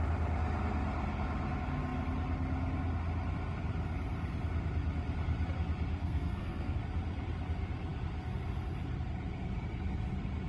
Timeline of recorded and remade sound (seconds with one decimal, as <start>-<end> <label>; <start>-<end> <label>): 0.0-5.9 recorded; 5.9-6.8 remade; 6.8-10.5 recorded